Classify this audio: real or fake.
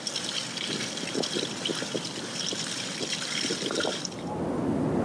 real